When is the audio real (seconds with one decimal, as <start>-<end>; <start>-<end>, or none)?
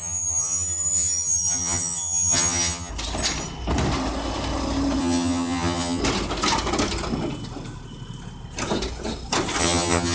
2.9-5.0; 6.0-9.6